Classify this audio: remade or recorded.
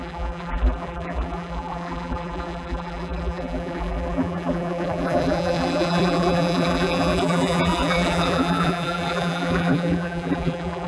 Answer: remade